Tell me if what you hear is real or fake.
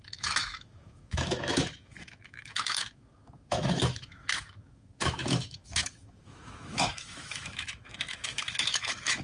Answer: fake